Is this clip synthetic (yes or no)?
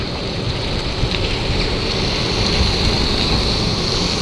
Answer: no